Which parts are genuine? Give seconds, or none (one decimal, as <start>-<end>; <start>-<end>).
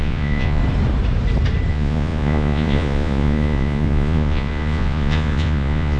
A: 0.6-1.7